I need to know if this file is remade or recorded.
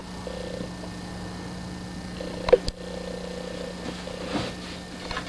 recorded